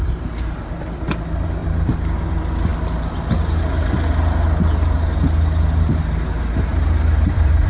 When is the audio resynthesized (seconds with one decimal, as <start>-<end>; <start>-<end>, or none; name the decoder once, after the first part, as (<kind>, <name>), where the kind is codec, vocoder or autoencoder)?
6.7-7.7 (vocoder, BigVGAN v2)

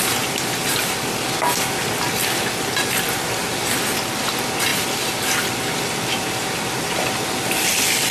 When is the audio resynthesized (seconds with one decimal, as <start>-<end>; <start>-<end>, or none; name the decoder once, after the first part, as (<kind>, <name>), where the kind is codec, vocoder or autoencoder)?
none

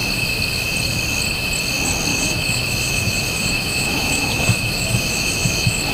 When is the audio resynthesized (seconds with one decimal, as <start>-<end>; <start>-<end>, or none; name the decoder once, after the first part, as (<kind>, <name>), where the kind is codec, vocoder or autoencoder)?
2.1-5.9 (autoencoder, DAC-VAE)

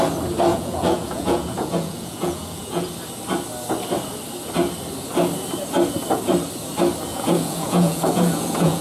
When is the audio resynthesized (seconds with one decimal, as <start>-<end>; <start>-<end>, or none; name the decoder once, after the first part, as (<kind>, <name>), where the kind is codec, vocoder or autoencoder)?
0.5-2.9 (vocoder, Vocos); 7.1-8.8

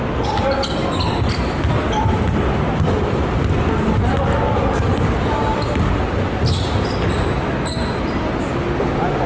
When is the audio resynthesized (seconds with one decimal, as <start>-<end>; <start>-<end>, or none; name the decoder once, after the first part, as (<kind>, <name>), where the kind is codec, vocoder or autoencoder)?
none

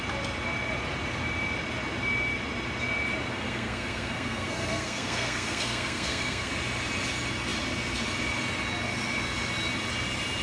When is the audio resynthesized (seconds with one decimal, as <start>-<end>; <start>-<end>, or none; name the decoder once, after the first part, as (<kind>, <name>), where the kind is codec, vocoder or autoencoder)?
3.3-6.5 (codec, SNAC)

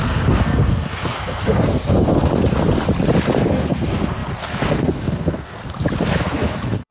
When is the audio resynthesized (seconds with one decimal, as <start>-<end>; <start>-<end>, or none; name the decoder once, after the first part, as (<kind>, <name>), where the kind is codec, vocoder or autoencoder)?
0.0-2.3 (codec, SNAC); 3.4-5.6; 6.1-6.9